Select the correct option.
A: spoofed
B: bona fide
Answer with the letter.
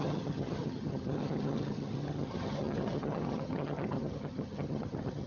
A